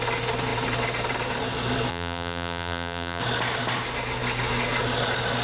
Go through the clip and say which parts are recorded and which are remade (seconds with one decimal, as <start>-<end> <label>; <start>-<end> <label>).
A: 0.0-1.9 recorded; 1.9-3.2 remade; 3.2-5.4 recorded